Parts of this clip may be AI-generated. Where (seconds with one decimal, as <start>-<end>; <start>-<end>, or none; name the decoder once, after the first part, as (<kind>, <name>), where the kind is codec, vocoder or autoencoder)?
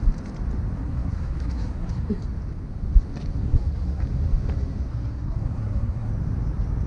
0.8-2.2 (codec, SNAC); 3.4-4.0; 4.9-6.1